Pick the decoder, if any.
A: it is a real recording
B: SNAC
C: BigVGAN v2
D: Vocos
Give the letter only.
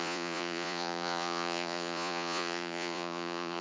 D